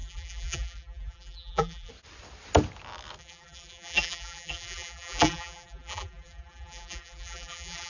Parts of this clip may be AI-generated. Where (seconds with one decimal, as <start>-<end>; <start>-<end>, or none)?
0.0-1.9; 3.2-7.9